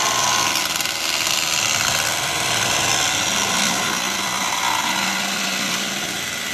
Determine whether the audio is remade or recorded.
recorded